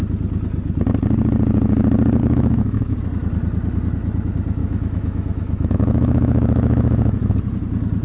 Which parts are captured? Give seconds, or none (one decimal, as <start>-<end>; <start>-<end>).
0.0-2.2; 3.0-4.6; 7.3-8.0